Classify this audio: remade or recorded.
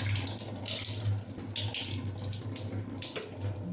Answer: recorded